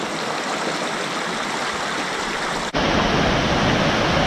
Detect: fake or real real